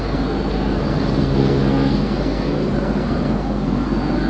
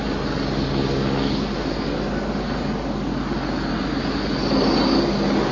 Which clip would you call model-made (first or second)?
first